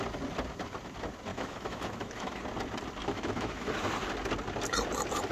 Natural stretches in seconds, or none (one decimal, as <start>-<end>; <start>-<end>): 0.0-1.3; 2.4-3.0; 3.7-5.3

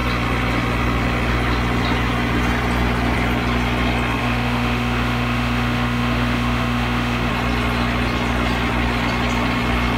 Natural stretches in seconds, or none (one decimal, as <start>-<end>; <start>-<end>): 0.0-4.2; 7.3-10.0

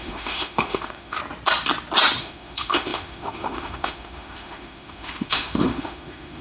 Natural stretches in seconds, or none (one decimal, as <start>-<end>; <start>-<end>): 1.2-2.2

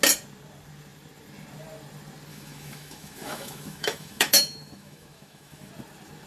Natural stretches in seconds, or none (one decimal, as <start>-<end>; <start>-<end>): 0.0-2.3; 5.7-6.3